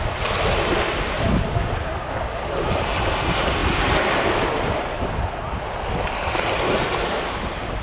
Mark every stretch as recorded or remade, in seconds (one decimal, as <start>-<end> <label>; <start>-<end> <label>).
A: 0.0-7.8 recorded

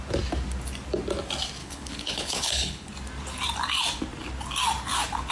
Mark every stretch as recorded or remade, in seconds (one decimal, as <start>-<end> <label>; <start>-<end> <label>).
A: 0.0-1.6 recorded; 1.6-2.9 remade; 2.9-5.3 recorded

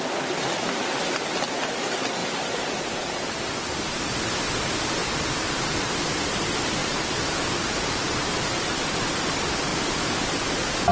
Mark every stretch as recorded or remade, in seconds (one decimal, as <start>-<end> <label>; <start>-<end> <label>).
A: 0.0-2.2 recorded; 2.2-3.2 remade; 3.2-6.8 recorded; 6.8-9.1 remade; 9.1-9.7 recorded; 9.7-10.3 remade; 10.3-10.9 recorded

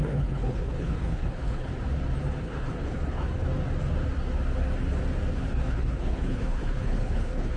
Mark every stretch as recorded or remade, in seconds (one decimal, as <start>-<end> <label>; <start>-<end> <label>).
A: 0.0-1.7 remade; 1.7-2.4 recorded; 2.4-3.5 remade; 3.5-5.3 recorded; 5.3-7.6 remade

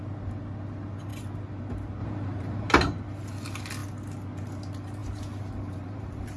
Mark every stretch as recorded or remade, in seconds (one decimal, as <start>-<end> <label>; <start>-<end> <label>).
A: 0.0-2.0 recorded; 2.0-2.7 remade; 2.7-5.0 recorded; 5.0-6.4 remade